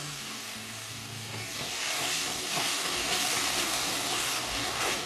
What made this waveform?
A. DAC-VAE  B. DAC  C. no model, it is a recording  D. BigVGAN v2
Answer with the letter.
B